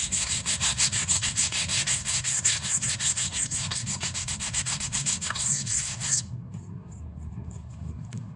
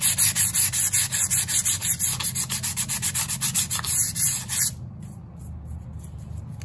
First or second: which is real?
second